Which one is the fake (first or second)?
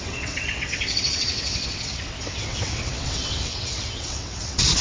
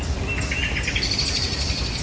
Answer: first